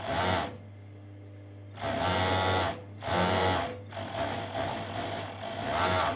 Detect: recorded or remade recorded